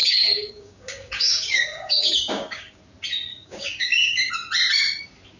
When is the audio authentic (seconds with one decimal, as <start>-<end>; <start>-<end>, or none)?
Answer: 2.8-3.3; 4.3-5.4